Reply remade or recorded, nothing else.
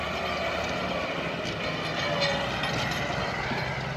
recorded